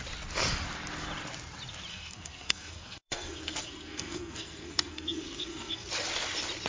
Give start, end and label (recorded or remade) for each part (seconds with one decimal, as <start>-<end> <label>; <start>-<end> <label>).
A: 0.0-1.9 recorded; 1.9-5.9 remade; 5.9-6.7 recorded